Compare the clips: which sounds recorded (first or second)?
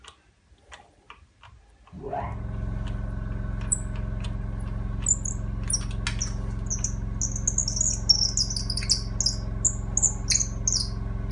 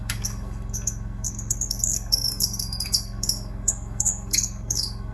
first